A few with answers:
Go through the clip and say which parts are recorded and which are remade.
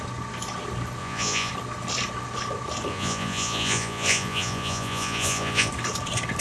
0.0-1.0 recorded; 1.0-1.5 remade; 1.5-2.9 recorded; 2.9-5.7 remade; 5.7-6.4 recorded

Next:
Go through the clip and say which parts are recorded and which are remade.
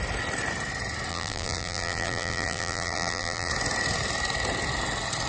0.0-1.1 recorded; 1.1-3.5 remade; 3.5-5.3 recorded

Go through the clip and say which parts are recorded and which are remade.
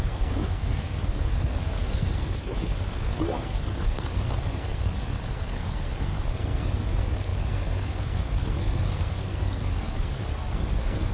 0.0-11.1 remade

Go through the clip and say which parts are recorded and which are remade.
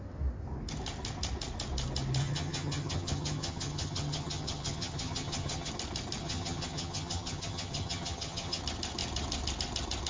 0.0-2.2 recorded; 2.2-5.7 remade; 5.7-6.2 recorded; 6.2-8.6 remade; 8.6-10.1 recorded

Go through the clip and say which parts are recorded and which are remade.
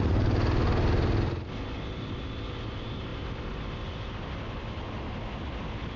0.0-6.0 recorded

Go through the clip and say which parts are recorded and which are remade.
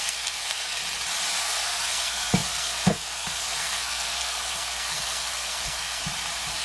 0.0-0.8 remade; 0.8-1.4 recorded; 1.4-6.0 remade; 6.0-6.6 recorded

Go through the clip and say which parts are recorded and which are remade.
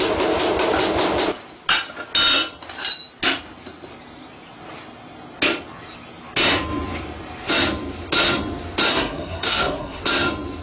0.0-8.9 recorded; 8.9-10.0 remade; 10.0-10.6 recorded